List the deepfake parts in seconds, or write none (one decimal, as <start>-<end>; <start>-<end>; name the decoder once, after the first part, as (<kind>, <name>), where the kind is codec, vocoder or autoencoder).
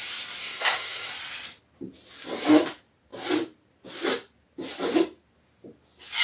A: 0.4-1.1 (codec, SNAC)